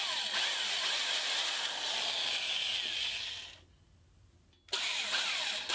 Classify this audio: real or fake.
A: real